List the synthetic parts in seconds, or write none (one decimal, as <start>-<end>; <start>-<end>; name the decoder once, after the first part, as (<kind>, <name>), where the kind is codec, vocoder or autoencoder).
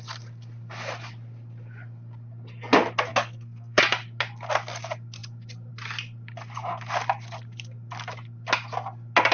3.1-3.8 (codec, SNAC)